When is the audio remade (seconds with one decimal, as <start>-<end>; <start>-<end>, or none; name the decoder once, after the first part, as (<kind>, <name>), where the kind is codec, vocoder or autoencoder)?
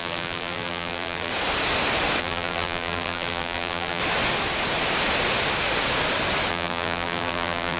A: 0.0-1.3 (vocoder, BigVGAN v2); 2.2-4.0; 6.5-7.8